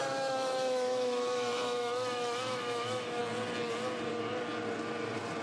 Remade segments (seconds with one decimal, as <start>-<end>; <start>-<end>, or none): 0.0-3.2